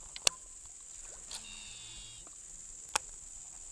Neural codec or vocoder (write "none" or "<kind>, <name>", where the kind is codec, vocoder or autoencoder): none